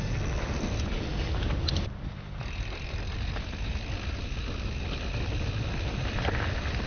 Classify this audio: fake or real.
real